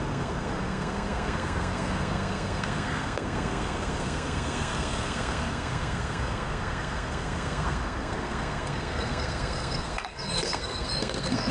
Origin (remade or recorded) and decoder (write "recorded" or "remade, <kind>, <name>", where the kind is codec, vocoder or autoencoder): remade, codec, SNAC